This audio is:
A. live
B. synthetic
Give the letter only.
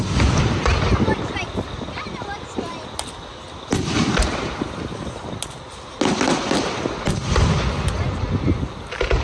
A